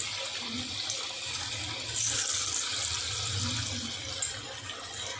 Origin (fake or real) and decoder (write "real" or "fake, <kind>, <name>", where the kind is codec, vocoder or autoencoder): real